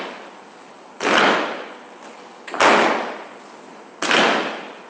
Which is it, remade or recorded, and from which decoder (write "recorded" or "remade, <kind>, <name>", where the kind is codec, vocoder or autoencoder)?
recorded